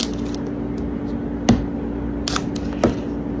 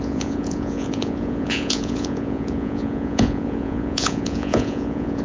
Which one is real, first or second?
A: first